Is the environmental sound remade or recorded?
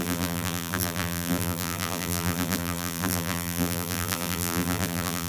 remade